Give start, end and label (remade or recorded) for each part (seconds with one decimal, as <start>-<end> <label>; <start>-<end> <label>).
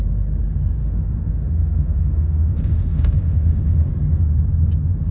0.0-0.8 recorded; 0.8-3.9 remade; 3.9-5.1 recorded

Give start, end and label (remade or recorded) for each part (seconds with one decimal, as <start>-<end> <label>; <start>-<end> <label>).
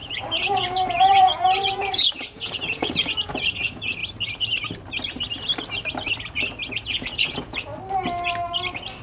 0.0-4.0 remade; 4.0-6.7 recorded; 6.7-7.7 remade; 7.7-9.0 recorded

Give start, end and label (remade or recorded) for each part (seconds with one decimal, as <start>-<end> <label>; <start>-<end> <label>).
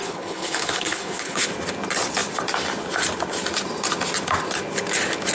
0.0-1.5 remade; 1.5-5.3 recorded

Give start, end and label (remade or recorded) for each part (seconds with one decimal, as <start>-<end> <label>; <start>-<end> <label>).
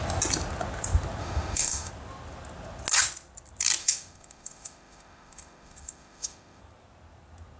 0.0-1.2 recorded; 1.2-1.9 remade; 1.9-3.8 recorded; 3.8-6.6 remade; 6.6-7.6 recorded